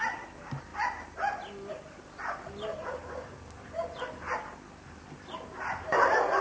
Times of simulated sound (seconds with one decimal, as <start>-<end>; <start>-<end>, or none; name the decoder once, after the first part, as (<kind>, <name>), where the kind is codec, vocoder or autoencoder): none